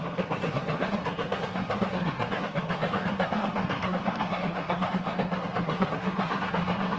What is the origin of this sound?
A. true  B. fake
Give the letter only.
B